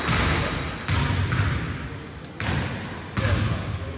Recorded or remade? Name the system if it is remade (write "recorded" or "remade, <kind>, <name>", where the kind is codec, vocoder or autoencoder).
recorded